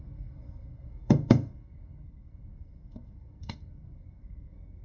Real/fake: fake